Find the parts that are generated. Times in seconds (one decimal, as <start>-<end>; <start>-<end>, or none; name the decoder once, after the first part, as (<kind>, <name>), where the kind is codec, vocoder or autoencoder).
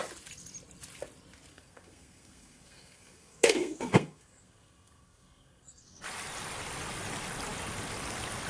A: 1.5-6.0 (codec, SNAC)